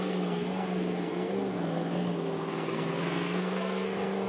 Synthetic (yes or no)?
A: yes